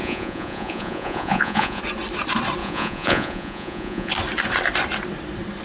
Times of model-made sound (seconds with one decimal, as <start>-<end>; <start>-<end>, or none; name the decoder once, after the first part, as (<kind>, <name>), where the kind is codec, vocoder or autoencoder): 0.0-1.8 (vocoder, Vocos); 2.6-4.1